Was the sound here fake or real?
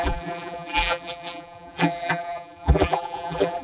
fake